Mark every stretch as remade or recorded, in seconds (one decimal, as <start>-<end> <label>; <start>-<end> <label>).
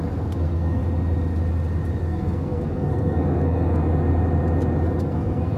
0.0-0.8 remade; 0.8-2.0 recorded; 2.0-3.8 remade; 3.8-5.0 recorded; 5.0-5.6 remade